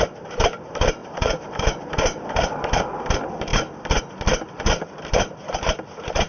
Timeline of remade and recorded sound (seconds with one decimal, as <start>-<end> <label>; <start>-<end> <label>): 0.0-1.0 recorded; 1.0-2.2 remade; 2.2-6.3 recorded